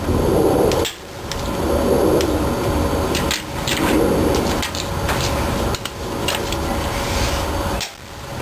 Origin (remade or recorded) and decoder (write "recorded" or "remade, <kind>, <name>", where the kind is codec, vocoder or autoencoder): recorded